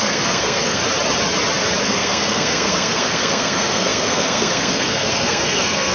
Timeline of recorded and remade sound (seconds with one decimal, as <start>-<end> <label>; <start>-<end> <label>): 0.0-0.8 remade; 0.8-1.8 recorded; 1.8-5.9 remade